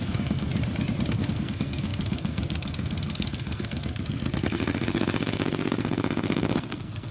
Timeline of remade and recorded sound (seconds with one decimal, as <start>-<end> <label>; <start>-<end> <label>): 0.0-0.5 remade; 0.5-1.1 recorded; 1.1-7.1 remade